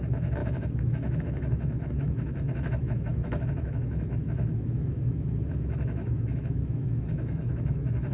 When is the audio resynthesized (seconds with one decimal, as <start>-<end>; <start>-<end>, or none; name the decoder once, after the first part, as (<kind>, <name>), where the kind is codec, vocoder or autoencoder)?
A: 0.0-8.1 (autoencoder, DAC-VAE)